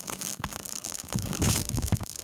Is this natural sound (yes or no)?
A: no